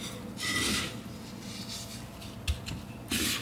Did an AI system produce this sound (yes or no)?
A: no